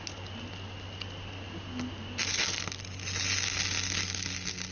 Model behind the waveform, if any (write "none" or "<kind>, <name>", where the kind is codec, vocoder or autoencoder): none